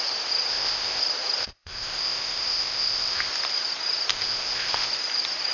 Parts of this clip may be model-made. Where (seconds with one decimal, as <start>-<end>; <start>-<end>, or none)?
0.5-1.0; 1.4-3.3; 4.1-4.9

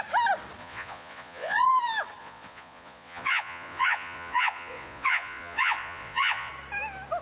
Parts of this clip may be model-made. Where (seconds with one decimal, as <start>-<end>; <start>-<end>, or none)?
0.6-1.7; 2.2-6.5